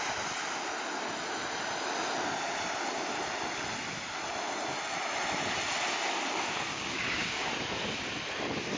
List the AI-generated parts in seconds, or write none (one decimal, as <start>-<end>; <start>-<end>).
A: 6.7-7.5